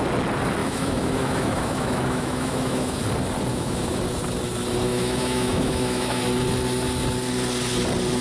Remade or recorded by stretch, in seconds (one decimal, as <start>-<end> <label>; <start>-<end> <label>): 0.0-0.6 recorded; 0.6-3.0 remade; 3.0-3.5 recorded; 3.5-4.0 remade; 4.0-4.9 recorded; 4.9-6.2 remade; 6.2-8.2 recorded